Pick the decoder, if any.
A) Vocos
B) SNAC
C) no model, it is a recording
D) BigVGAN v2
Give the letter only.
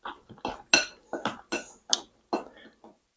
C